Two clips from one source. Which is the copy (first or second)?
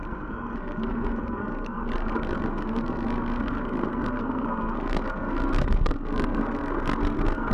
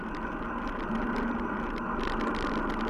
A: first